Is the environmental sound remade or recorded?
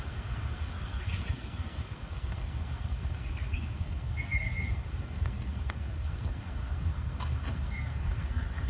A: remade